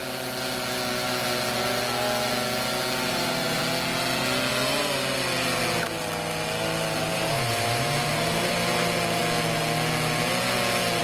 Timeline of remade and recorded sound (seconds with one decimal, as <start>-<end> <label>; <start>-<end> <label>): 0.0-3.1 recorded; 3.1-3.6 remade; 3.6-7.1 recorded; 7.1-9.2 remade; 9.2-11.0 recorded